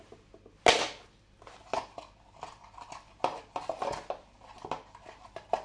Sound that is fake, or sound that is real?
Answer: real